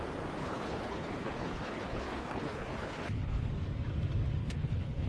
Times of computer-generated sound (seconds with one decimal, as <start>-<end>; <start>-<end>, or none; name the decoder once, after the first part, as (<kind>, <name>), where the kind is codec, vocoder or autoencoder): 0.4-3.5 (codec, HILCodec); 4.4-5.1